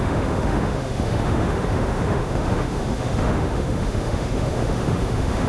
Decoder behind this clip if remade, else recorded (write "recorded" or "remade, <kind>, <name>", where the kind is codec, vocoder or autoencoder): remade, autoencoder, DAC-VAE